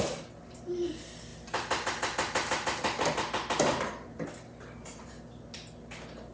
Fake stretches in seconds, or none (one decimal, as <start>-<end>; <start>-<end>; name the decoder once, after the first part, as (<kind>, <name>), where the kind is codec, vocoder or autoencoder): none